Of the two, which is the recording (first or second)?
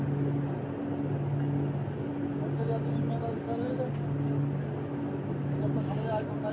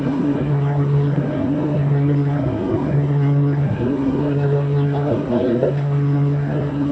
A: first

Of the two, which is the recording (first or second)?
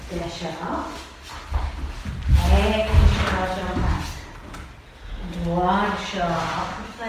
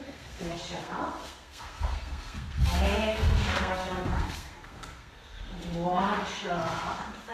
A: first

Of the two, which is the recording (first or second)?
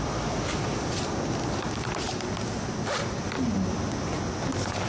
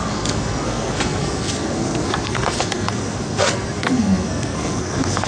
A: first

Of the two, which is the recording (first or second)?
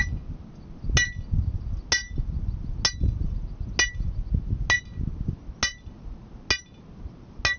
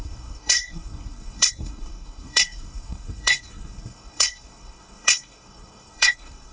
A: first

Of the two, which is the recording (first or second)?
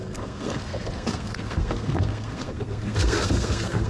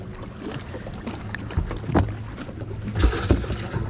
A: second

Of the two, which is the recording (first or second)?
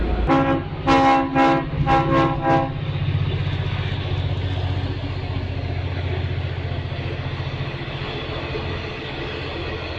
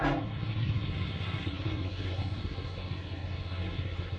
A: first